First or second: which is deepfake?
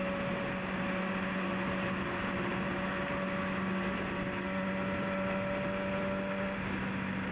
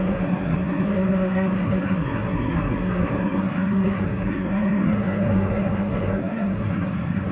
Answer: second